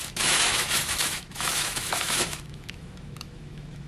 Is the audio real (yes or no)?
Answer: no